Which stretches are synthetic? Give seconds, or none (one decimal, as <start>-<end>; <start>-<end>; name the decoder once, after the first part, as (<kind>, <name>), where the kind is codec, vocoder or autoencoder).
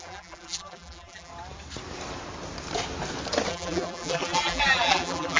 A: 0.0-1.3 (vocoder, BigVGAN v2); 3.5-5.4